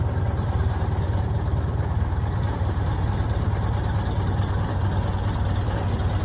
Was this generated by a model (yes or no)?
no